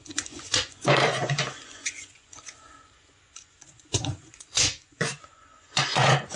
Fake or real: fake